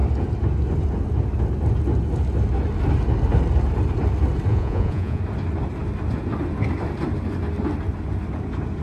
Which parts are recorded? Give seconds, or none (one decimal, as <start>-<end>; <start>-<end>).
0.0-4.5; 5.2-8.8